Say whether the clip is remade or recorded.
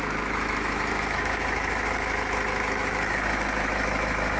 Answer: remade